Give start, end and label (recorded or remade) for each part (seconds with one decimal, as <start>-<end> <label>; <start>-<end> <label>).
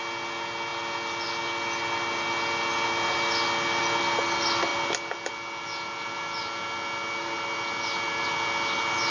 0.0-9.1 recorded